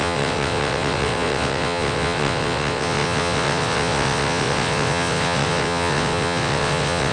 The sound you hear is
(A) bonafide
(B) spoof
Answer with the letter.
B